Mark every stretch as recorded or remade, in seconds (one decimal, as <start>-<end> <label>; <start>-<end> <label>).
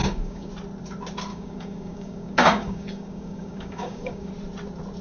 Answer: 0.0-0.5 remade; 0.5-1.3 recorded; 1.3-4.3 remade; 4.3-5.0 recorded